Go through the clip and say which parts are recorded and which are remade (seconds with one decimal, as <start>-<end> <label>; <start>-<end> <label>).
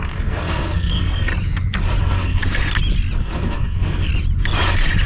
0.0-1.3 remade; 1.3-2.0 recorded; 2.0-2.4 remade; 2.4-3.2 recorded; 3.2-4.1 remade; 4.1-5.1 recorded